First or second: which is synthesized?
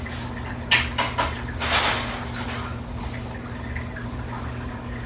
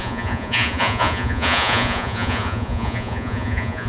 second